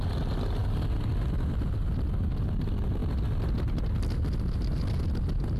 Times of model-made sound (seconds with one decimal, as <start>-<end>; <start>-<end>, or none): none